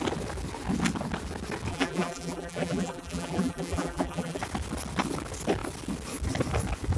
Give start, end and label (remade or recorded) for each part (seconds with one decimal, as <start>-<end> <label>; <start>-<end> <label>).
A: 0.0-1.7 recorded; 1.7-4.4 remade; 4.4-7.0 recorded